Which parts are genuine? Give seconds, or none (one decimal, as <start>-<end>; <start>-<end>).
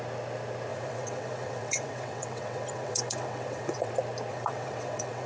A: 0.0-0.7; 3.9-4.3